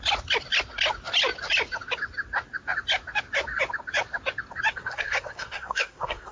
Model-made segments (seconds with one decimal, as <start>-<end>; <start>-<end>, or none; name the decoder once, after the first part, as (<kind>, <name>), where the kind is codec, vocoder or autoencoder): 4.7-6.3 (codec, SNAC)